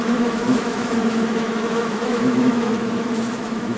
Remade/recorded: remade